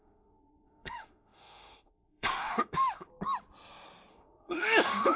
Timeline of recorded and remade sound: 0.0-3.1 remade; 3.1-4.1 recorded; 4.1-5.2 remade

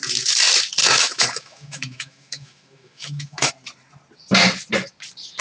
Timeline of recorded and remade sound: 0.0-0.8 recorded; 0.8-3.5 remade; 3.5-5.4 recorded